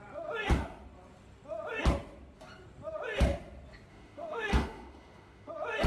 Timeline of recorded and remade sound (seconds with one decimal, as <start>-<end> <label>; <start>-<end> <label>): 0.0-3.9 recorded; 3.9-5.5 remade; 5.5-5.9 recorded